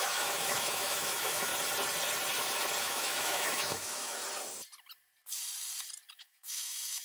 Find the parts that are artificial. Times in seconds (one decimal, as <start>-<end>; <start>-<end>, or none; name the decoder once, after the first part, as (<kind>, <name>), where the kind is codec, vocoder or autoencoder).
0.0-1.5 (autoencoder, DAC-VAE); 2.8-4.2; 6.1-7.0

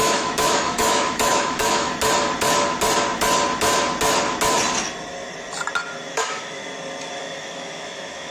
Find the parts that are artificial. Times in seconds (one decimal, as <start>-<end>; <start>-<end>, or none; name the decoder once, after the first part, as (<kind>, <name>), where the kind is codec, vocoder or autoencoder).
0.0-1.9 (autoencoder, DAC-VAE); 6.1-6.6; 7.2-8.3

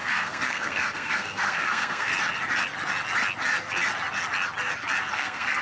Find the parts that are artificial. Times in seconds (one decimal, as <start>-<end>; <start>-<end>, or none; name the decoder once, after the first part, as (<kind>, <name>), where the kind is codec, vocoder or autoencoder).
0.0-2.1 (codec, SNAC); 5.1-5.6